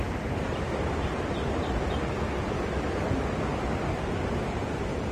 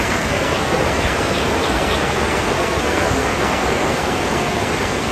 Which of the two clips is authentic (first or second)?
first